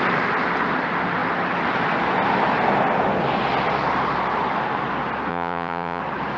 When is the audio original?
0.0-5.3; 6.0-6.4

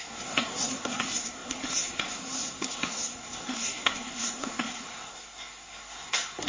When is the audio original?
none

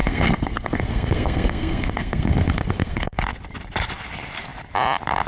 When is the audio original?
3.2-5.3

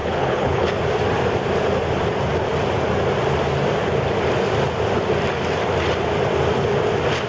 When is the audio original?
0.7-7.3